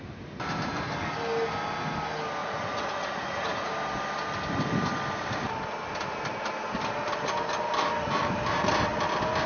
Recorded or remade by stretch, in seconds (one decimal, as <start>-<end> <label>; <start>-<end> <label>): 0.0-2.4 recorded; 2.4-3.7 remade; 3.7-9.5 recorded